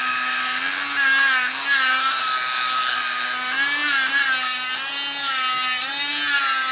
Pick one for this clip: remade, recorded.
recorded